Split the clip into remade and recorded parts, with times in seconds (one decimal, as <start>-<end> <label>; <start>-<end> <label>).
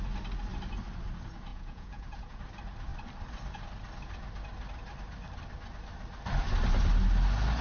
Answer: 0.0-1.5 recorded; 1.5-2.4 remade; 2.4-7.6 recorded